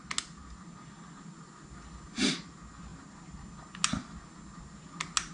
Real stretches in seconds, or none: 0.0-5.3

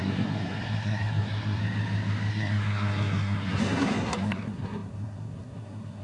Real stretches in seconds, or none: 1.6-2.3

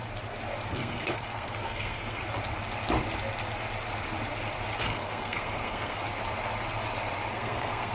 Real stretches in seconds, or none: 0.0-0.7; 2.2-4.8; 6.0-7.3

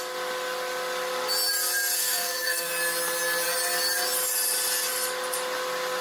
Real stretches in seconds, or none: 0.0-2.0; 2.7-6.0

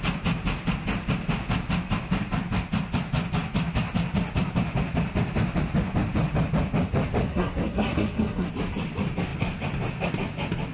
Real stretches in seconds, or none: 0.0-7.3; 8.5-10.7